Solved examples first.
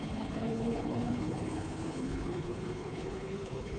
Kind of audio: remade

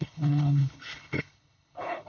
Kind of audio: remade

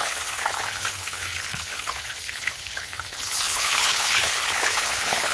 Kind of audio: remade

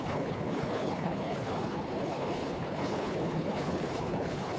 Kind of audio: remade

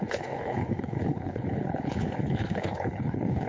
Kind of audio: remade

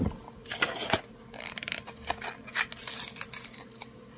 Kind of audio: recorded